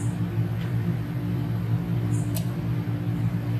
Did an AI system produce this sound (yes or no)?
no